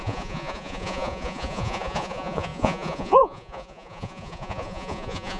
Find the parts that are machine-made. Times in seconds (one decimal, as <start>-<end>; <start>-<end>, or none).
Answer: 0.0-5.4